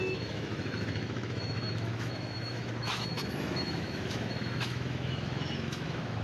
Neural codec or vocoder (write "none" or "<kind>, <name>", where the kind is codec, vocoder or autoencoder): autoencoder, DAC-VAE